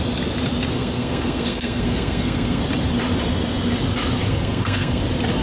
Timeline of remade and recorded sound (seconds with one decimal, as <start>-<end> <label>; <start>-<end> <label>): 0.0-0.7 recorded; 0.7-2.6 remade; 2.6-4.3 recorded; 4.3-5.0 remade; 5.0-5.4 recorded